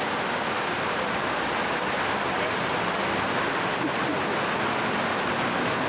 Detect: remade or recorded recorded